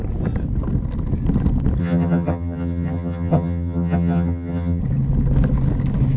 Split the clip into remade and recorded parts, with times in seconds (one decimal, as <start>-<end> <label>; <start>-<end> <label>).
0.0-1.8 recorded; 1.8-4.8 remade; 4.8-6.2 recorded